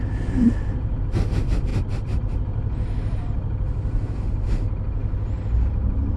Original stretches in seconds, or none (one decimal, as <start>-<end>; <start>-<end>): 0.0-6.2